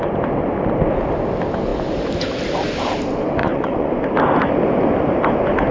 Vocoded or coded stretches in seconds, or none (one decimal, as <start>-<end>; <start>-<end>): 3.4-3.9